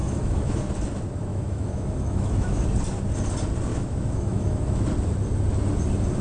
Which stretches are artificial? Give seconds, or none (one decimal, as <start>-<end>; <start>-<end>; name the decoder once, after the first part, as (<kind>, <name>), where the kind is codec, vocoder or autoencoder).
0.0-0.6 (autoencoder, DAC-VAE); 1.3-2.6; 3.7-4.9